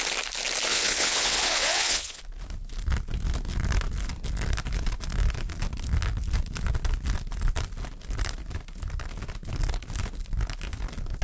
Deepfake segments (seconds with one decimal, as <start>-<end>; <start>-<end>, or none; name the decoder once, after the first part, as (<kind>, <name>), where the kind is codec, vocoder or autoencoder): 0.7-2.2 (vocoder, WaveNeXt)